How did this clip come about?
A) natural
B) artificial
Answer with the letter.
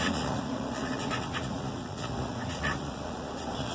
B